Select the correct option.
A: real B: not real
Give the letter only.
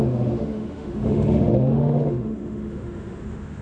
B